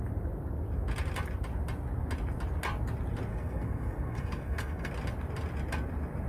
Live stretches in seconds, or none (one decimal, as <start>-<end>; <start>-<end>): 0.0-3.3; 4.9-6.3

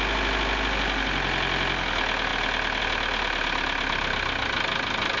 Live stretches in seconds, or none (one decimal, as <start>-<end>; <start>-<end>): 0.0-5.2

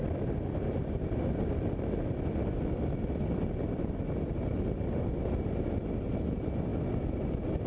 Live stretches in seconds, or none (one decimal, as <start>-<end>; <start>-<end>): 0.0-7.7

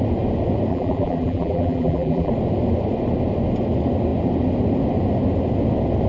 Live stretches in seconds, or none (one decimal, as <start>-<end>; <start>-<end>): 0.0-0.7; 2.3-6.1

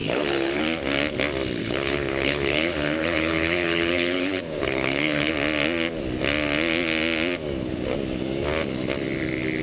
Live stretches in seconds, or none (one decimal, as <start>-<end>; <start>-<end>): 0.6-1.6; 5.3-9.6

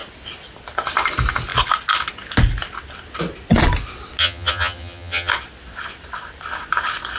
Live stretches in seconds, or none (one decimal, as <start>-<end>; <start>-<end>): 0.0-4.2; 5.3-7.2